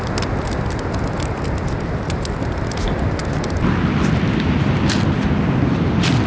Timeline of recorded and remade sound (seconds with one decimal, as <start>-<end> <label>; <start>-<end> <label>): 0.0-6.3 recorded